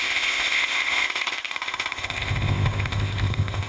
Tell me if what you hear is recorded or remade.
remade